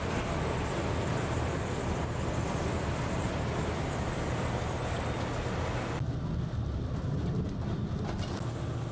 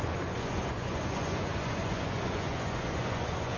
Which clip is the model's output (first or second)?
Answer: second